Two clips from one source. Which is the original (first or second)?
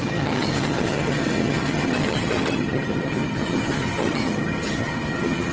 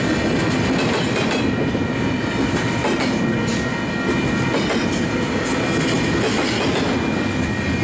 second